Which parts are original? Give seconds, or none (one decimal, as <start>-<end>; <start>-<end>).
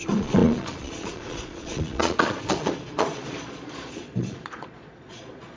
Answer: none